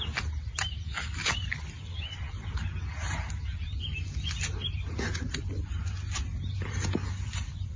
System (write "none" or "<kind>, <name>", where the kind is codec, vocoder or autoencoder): none